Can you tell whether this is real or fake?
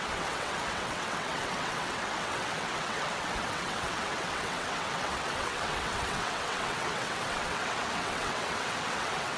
fake